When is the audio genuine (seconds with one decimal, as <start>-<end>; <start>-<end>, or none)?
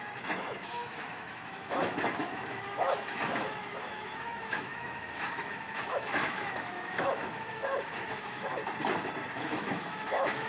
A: 8.6-9.4